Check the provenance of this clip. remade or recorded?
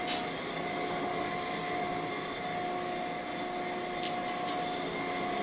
recorded